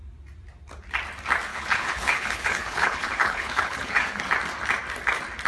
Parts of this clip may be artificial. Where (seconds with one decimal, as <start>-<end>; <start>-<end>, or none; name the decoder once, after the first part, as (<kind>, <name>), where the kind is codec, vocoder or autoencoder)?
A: 1.5-4.2 (codec, HILCodec)